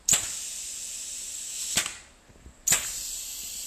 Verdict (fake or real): real